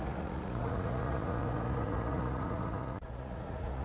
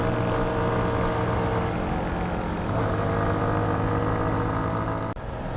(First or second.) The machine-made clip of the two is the first